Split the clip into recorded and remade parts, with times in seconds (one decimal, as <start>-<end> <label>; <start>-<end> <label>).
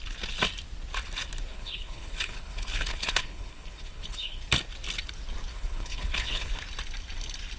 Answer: 0.0-1.5 recorded; 1.5-4.4 remade; 4.4-5.5 recorded; 5.5-6.5 remade; 6.5-7.6 recorded